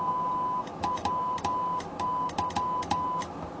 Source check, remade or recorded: recorded